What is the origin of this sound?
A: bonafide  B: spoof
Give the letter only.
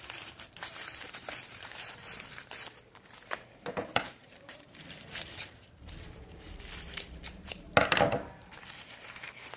B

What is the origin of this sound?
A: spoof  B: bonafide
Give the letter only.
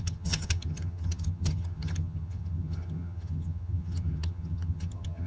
A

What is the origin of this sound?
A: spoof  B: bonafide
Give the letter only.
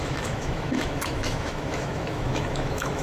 A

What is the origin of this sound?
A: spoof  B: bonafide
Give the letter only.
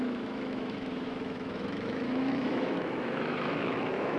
A